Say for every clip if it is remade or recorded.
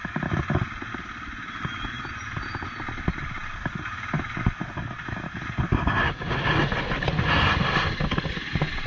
recorded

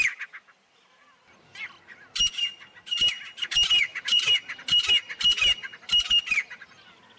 recorded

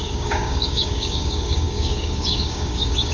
remade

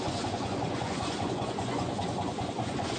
remade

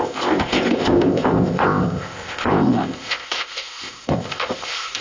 remade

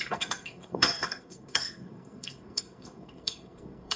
remade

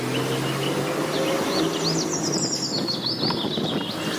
recorded